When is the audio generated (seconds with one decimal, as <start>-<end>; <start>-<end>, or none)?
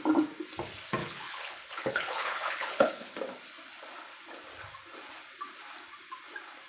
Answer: 1.0-3.2